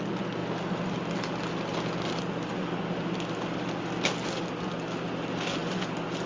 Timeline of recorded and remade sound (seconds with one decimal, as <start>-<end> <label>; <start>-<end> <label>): 0.0-6.3 recorded